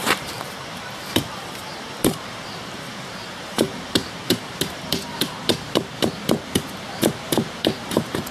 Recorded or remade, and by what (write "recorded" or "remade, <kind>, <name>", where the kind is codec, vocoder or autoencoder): remade, vocoder, BigVGAN v2